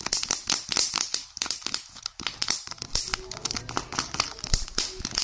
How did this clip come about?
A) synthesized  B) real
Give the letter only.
B